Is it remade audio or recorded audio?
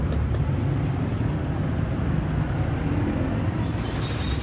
recorded